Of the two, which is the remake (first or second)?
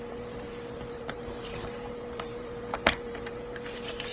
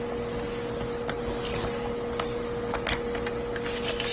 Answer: first